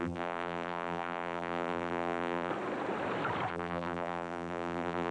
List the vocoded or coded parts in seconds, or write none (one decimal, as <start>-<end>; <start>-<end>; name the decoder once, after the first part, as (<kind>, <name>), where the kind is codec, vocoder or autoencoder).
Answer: 0.0-2.5 (vocoder, BigVGAN v2); 3.5-5.1